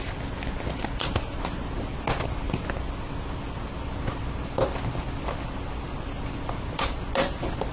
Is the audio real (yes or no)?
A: yes